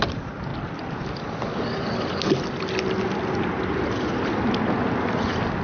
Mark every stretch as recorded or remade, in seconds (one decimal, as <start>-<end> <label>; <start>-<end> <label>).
0.0-5.6 recorded